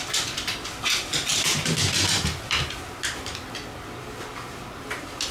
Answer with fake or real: real